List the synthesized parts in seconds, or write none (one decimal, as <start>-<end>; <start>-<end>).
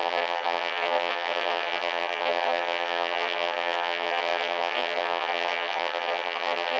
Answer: 0.0-6.8